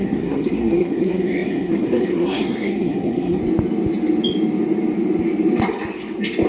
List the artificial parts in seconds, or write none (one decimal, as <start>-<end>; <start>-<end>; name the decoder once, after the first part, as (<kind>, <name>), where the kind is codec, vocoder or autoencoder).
0.0-3.4 (codec, SNAC)